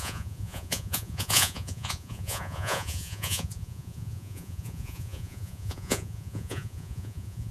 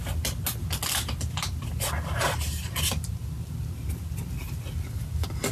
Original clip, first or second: second